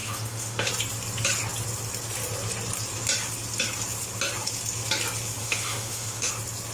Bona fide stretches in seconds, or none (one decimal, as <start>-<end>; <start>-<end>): 0.7-5.4; 6.3-6.7